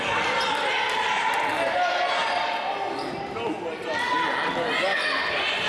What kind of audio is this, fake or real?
real